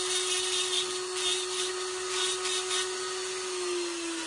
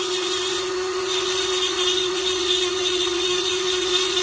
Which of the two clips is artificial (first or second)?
second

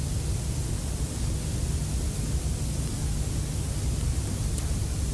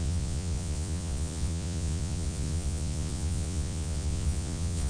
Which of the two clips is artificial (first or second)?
second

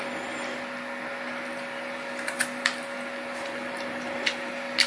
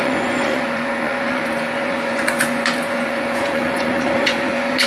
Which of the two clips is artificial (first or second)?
second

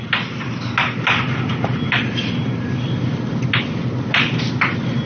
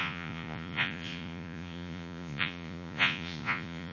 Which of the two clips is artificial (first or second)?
second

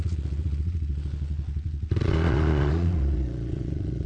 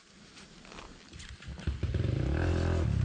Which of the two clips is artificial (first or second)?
first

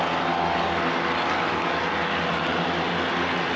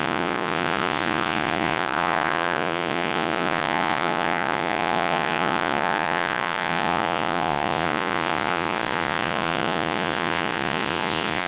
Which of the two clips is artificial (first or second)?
second